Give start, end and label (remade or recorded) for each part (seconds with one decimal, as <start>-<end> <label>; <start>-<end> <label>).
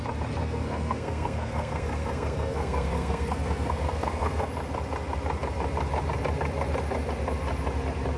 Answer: 0.0-0.4 recorded; 0.4-4.5 remade; 4.5-8.2 recorded